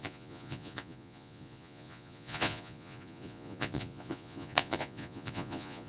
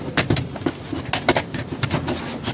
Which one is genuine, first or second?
second